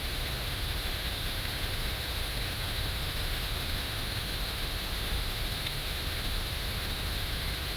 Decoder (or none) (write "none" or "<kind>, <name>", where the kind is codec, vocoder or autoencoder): autoencoder, DAC-VAE